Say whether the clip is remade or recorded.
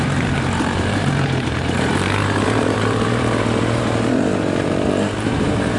remade